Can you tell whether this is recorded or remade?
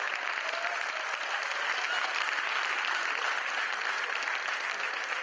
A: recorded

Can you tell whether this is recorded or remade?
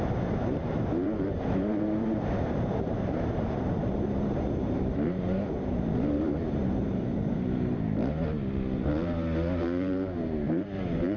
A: remade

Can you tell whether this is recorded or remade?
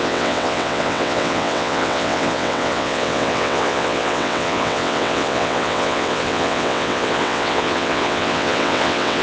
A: remade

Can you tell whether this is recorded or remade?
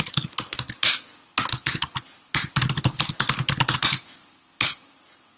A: recorded